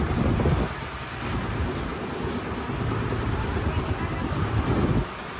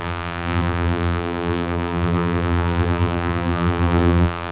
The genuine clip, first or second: first